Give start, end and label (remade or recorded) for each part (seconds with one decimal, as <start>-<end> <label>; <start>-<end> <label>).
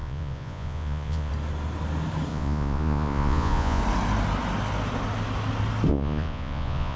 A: 0.0-1.3 remade; 1.3-2.3 recorded; 2.3-3.8 remade; 3.8-5.9 recorded; 5.9-7.0 remade